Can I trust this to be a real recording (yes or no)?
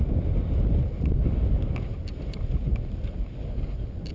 yes